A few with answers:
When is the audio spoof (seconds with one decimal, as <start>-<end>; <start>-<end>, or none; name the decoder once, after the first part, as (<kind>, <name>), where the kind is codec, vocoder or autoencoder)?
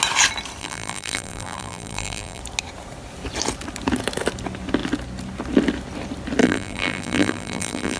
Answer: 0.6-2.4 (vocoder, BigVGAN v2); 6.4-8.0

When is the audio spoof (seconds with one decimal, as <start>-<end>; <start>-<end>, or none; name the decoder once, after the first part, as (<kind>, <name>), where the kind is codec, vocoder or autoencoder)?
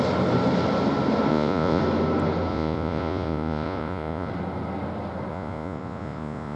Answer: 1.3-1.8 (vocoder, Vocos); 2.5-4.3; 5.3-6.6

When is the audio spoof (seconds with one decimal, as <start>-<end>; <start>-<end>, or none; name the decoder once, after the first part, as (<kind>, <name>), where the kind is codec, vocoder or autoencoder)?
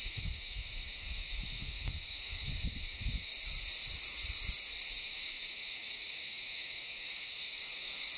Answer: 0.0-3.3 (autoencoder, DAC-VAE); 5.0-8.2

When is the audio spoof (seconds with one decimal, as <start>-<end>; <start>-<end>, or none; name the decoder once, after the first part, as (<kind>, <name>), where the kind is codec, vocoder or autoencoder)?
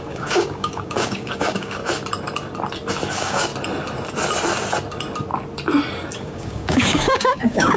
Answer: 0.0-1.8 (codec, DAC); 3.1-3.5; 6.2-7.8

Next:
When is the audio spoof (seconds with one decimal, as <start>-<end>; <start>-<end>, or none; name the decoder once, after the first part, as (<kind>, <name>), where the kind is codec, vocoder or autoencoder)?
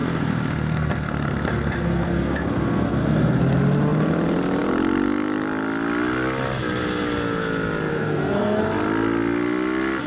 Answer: 0.0-3.4 (codec, SNAC); 7.9-8.6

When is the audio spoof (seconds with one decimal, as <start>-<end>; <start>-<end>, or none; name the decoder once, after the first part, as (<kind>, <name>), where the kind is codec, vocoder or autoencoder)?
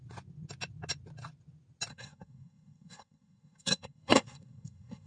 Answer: 1.9-5.1 (codec, SNAC)